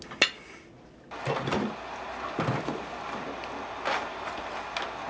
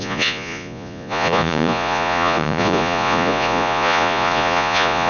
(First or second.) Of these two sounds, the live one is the first